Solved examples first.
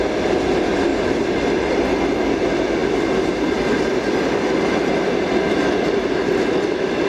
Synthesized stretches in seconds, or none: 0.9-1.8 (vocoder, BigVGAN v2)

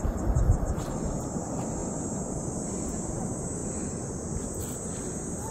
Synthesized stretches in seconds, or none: 0.0-3.6 (vocoder, BigVGAN v2)

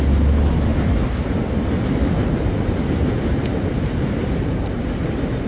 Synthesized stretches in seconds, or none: 0.7-2.8 (vocoder, BigVGAN v2); 3.5-5.0

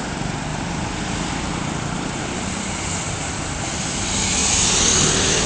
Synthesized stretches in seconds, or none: 0.5-3.8 (vocoder, BigVGAN v2); 4.4-5.5